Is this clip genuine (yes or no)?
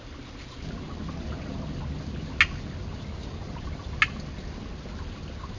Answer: yes